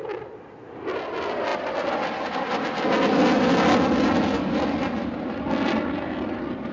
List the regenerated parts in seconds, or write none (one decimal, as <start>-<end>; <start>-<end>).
none